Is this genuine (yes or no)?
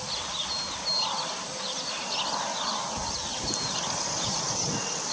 yes